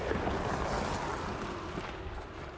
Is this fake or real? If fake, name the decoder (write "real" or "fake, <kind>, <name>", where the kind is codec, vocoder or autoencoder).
real